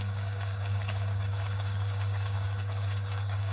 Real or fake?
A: fake